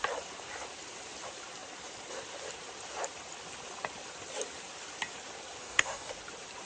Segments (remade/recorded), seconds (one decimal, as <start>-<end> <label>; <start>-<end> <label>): 0.0-5.6 recorded; 5.6-6.1 remade; 6.1-6.7 recorded